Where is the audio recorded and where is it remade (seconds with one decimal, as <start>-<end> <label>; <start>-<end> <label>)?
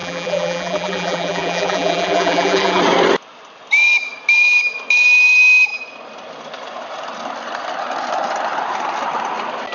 0.0-2.8 remade; 2.8-9.7 recorded